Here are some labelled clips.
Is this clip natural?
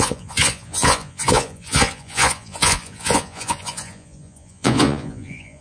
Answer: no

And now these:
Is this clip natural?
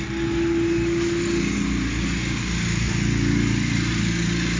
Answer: yes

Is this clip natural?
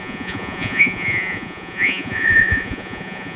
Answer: no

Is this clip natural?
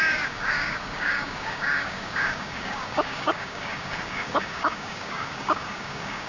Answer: no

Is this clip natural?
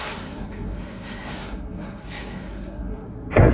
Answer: no